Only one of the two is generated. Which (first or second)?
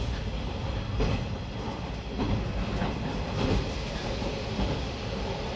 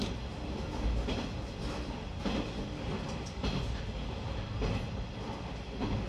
first